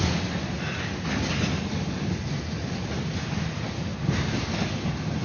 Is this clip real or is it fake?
real